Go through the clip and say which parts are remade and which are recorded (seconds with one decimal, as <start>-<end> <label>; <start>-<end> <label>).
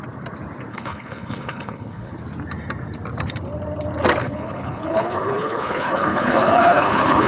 0.0-0.7 recorded; 0.7-2.2 remade; 2.2-4.2 recorded; 4.2-7.3 remade